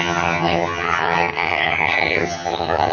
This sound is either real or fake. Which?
fake